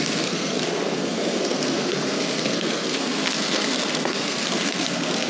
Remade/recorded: remade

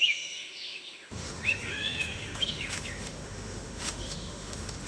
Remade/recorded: remade